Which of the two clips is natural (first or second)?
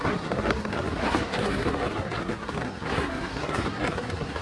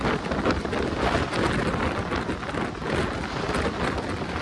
second